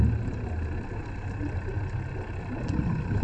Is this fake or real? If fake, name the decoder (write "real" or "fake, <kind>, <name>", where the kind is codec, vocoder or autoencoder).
real